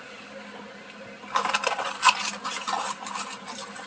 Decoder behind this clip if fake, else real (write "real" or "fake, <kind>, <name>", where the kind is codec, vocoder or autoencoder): real